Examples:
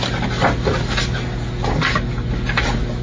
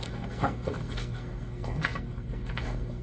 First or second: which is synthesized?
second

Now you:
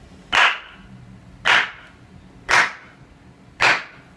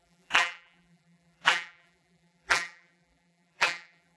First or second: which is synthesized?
second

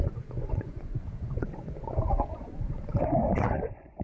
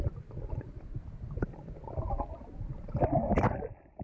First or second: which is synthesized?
first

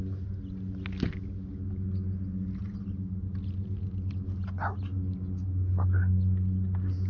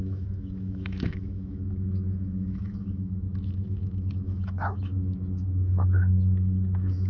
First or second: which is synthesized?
second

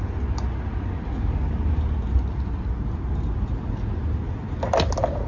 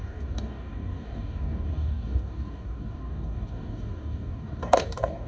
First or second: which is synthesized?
second